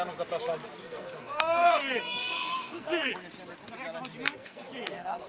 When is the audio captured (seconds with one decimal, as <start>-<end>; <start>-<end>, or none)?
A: 0.0-0.8; 3.1-4.3